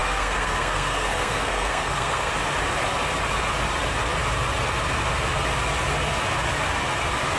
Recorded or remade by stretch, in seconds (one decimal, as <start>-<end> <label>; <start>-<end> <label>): 0.0-2.3 remade; 2.3-7.4 recorded